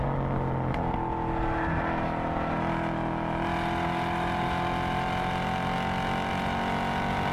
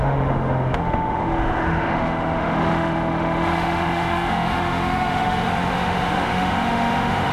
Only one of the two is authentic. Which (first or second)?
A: first